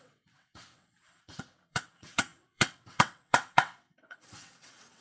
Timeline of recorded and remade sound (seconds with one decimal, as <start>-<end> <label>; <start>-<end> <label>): 0.0-5.0 remade